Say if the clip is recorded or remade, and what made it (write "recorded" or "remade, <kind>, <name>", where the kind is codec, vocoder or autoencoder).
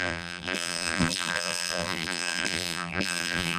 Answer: remade, vocoder, BigVGAN v2